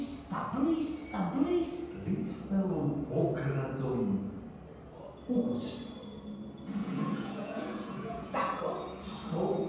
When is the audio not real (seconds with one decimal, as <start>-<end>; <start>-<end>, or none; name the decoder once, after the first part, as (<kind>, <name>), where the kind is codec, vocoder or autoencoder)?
6.8-8.6 (vocoder, Vocos)

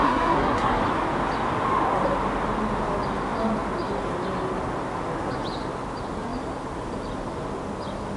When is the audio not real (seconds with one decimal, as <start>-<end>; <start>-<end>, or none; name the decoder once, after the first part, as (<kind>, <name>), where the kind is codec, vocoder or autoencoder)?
0.0-0.8 (codec, SNAC)

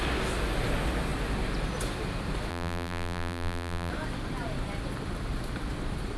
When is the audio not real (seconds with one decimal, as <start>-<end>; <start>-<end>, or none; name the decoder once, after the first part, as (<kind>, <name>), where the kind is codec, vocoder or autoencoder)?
2.5-3.9 (vocoder, BigVGAN v2)

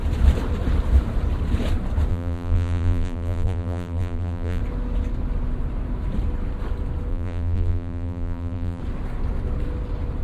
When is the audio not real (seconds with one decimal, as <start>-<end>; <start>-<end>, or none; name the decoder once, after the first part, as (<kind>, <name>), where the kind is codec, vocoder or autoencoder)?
2.1-4.6 (vocoder, BigVGAN v2); 7.1-8.8

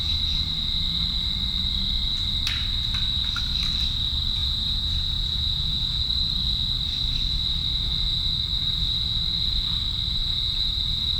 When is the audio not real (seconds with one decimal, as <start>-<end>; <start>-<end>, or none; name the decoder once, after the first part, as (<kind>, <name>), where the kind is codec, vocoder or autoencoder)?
4.4-6.0 (vocoder, Vocos); 10.2-10.7

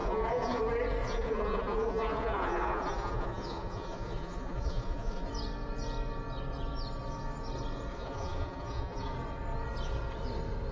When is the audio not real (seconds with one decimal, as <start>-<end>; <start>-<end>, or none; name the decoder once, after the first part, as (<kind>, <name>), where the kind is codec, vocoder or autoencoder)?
0.0-0.6 (vocoder, Vocos); 1.0-5.3; 7.9-9.1

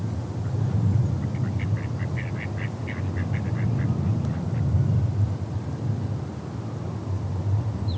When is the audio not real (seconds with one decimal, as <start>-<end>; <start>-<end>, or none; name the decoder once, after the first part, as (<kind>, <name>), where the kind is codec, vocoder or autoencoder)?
none

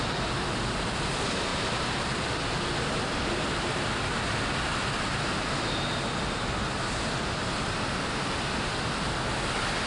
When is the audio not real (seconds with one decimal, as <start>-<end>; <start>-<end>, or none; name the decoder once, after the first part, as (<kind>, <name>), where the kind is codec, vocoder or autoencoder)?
1.5-2.3 (vocoder, BigVGAN v2)